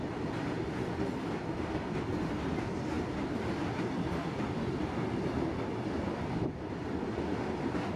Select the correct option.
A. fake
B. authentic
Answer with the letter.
B